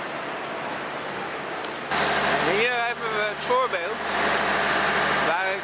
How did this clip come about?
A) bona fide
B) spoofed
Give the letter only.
A